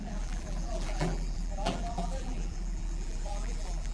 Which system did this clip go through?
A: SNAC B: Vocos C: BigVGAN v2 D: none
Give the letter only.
C